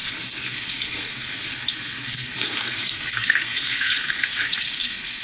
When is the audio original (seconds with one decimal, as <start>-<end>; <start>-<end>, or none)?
none